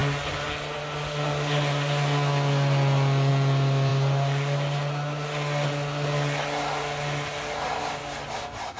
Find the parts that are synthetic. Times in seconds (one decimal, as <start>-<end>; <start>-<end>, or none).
none